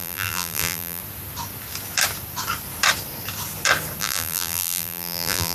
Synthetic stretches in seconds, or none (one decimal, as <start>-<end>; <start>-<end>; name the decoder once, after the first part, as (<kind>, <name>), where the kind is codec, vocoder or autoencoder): 0.0-1.0 (vocoder, BigVGAN v2); 4.0-5.5